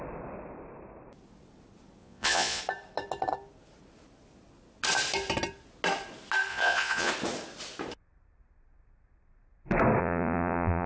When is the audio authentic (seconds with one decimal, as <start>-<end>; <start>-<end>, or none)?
0.0-2.0; 2.6-6.5; 7.1-10.0